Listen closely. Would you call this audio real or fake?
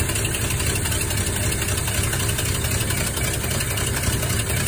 real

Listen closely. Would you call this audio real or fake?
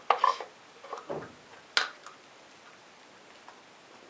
real